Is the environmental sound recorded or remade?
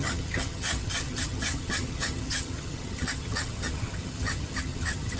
remade